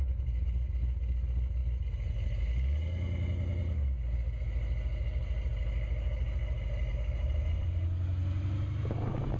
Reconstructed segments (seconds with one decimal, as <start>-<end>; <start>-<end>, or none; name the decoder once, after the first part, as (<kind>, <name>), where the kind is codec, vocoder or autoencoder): none